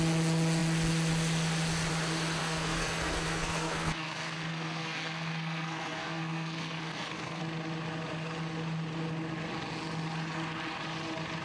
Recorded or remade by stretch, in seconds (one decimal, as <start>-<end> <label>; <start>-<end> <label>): 0.0-2.4 recorded; 2.4-7.4 remade; 7.4-11.4 recorded